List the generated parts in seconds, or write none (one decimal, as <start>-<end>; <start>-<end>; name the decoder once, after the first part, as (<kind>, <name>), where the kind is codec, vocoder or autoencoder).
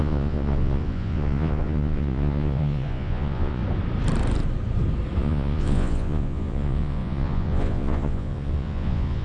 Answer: 0.0-3.6 (vocoder, Vocos); 5.2-9.2